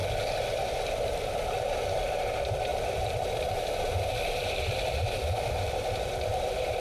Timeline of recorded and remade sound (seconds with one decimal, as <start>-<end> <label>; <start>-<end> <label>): 0.0-2.0 recorded; 2.0-6.8 remade